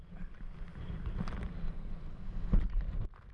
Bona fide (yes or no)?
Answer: yes